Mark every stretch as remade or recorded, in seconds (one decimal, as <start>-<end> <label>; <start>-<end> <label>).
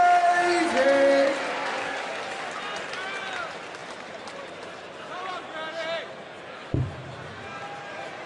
0.0-1.6 recorded; 1.6-2.2 remade; 2.2-8.3 recorded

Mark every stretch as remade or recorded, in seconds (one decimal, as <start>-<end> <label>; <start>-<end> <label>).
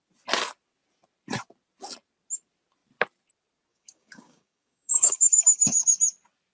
0.0-3.7 recorded; 3.7-6.0 remade; 6.0-6.5 recorded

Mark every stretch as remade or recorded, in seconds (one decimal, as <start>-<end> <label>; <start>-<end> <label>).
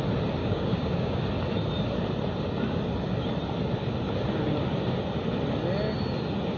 0.0-0.4 recorded; 0.4-1.2 remade; 1.2-6.6 recorded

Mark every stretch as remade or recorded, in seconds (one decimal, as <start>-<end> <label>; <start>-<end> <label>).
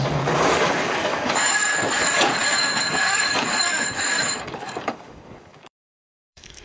0.0-6.6 remade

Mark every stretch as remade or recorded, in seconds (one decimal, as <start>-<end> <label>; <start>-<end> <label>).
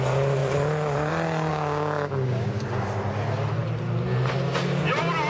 0.0-1.5 recorded; 1.5-2.6 remade; 2.6-5.3 recorded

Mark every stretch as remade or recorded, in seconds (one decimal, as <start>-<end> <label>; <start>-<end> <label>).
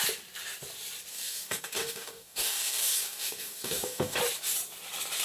0.0-1.1 recorded; 1.1-4.2 remade; 4.2-5.2 recorded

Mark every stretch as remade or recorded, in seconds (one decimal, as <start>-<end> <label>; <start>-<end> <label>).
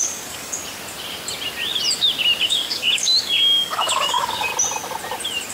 0.0-0.6 remade; 0.6-2.4 recorded; 2.4-4.5 remade; 4.5-5.5 recorded